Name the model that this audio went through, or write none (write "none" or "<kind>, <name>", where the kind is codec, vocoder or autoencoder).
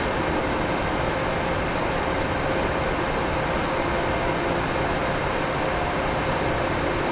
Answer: none